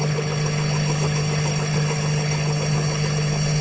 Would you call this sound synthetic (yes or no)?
yes